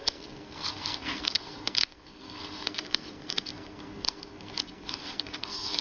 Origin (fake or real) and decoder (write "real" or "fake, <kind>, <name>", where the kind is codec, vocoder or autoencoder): fake, codec, SNAC